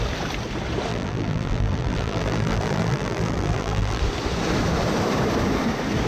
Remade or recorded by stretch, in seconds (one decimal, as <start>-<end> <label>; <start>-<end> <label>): 0.0-0.9 recorded; 0.9-4.0 remade; 4.0-6.1 recorded